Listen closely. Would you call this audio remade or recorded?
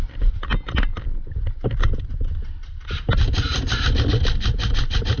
recorded